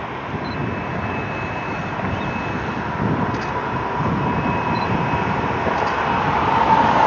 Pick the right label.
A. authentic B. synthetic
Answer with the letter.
A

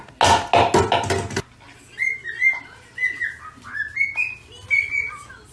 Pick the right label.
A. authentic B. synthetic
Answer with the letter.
A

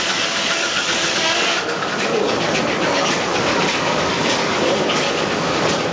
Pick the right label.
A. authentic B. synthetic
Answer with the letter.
B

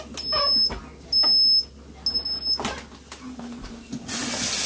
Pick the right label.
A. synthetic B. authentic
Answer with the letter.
B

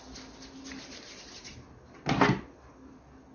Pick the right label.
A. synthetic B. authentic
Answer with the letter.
B